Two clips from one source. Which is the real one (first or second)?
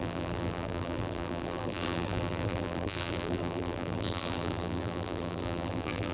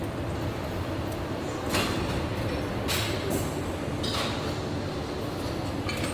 second